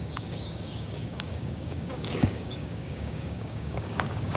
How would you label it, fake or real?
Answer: fake